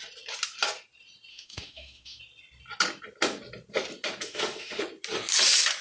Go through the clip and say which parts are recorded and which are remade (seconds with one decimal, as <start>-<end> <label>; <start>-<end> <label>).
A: 0.0-1.3 recorded; 1.3-2.2 remade; 2.2-4.2 recorded; 4.2-4.8 remade; 4.8-5.8 recorded